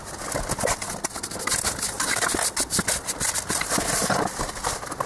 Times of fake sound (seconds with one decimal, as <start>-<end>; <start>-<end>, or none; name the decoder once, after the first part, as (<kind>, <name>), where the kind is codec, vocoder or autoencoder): none